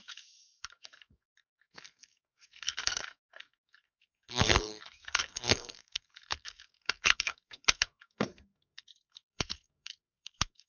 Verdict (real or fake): fake